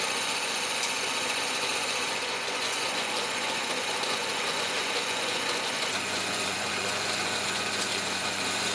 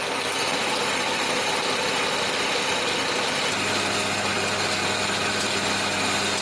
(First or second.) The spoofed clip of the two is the first